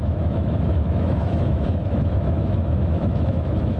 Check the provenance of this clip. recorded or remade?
remade